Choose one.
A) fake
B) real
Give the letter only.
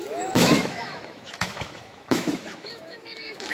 A